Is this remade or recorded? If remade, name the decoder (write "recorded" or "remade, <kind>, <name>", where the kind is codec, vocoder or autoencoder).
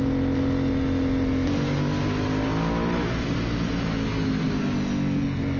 recorded